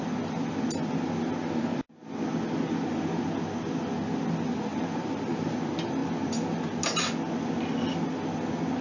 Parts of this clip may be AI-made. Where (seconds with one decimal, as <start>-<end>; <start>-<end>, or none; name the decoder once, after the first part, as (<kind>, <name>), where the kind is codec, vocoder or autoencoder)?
4.7-5.6 (vocoder, BigVGAN v2)